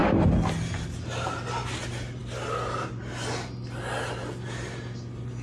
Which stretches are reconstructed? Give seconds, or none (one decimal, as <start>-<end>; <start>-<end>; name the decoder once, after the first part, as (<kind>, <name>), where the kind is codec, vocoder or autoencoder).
none